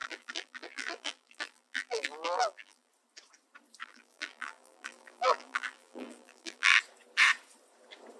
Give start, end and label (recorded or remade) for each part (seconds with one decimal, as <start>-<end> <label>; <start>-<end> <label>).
0.0-2.9 remade; 2.9-3.8 recorded; 3.8-6.8 remade; 6.8-8.2 recorded